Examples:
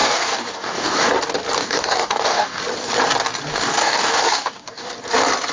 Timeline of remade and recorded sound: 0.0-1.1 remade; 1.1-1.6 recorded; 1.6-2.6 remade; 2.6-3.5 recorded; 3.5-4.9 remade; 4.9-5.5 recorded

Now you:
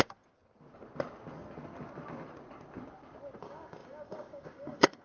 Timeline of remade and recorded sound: 0.0-0.4 remade; 0.4-3.4 recorded; 3.4-5.0 remade

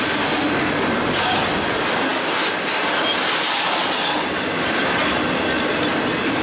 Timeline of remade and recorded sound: 0.0-6.4 recorded

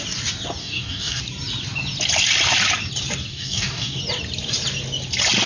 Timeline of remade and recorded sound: 0.0-0.6 recorded; 0.6-1.2 remade; 1.2-3.3 recorded; 3.3-4.0 remade; 4.0-5.5 recorded

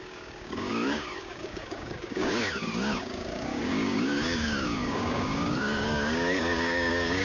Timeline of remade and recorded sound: 0.0-7.2 remade